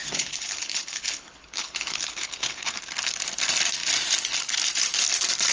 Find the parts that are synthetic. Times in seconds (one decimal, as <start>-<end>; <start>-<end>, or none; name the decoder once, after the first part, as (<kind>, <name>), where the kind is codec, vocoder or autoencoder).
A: 0.0-2.8 (codec, HILCodec)